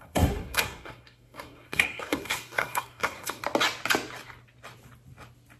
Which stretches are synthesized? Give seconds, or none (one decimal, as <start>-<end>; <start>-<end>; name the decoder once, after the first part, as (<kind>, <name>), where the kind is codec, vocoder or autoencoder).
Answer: 0.0-3.4 (codec, SNAC)